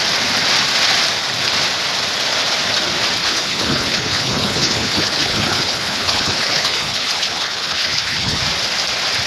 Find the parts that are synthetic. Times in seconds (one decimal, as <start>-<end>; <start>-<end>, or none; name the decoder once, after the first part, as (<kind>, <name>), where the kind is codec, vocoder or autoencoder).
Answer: 3.2-8.4 (codec, HILCodec)